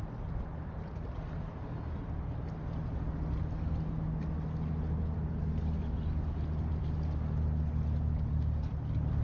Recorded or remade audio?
recorded